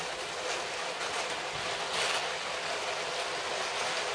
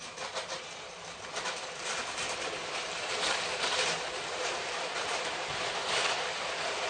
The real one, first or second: first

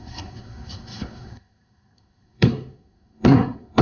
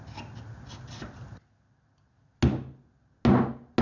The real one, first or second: second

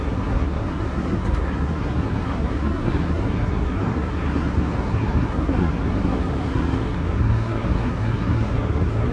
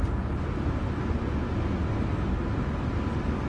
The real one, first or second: second